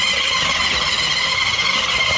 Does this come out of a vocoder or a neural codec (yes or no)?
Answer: no